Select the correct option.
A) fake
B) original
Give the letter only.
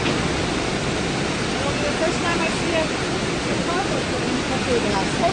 B